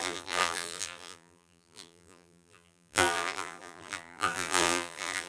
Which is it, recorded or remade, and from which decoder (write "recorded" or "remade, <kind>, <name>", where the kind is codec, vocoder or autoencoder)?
remade, vocoder, BigVGAN v2